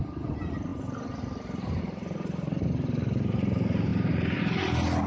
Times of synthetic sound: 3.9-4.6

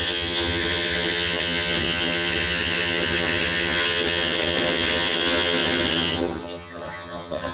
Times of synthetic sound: 0.0-7.5

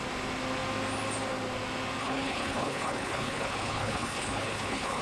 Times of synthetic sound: 2.0-5.0

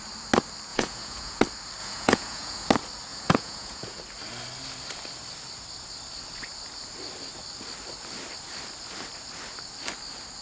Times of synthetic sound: 0.7-1.4; 1.8-2.7; 3.1-4.0